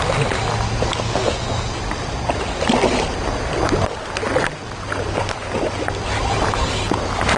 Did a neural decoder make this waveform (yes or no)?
no